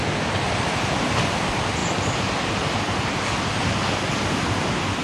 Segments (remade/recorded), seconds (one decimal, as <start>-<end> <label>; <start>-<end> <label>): 0.0-5.0 recorded